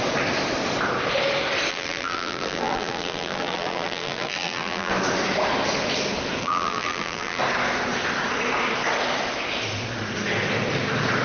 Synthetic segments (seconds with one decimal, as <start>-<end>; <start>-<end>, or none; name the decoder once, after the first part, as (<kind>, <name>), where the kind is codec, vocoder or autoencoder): 1.7-4.9 (vocoder, BigVGAN v2); 6.4-7.4

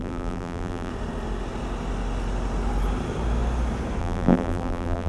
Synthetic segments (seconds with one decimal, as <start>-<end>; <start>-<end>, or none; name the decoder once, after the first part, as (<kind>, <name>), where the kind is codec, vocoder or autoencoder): 0.0-0.9 (vocoder, BigVGAN v2); 4.0-5.1

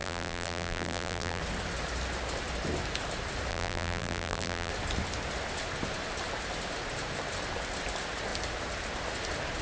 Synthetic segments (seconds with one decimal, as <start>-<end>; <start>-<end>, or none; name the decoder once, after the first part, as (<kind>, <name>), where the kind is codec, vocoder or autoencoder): 0.0-1.4 (vocoder, BigVGAN v2); 3.5-4.7

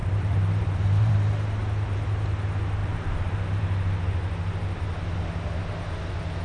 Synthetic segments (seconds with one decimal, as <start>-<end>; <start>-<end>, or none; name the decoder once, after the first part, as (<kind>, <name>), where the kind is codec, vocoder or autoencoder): 0.0-1.1 (vocoder, BigVGAN v2); 2.8-3.6

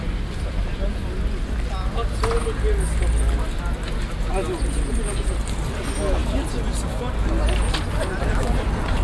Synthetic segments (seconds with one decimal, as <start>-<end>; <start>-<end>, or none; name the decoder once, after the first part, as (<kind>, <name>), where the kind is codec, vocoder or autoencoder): none